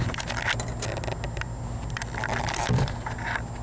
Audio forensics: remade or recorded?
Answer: recorded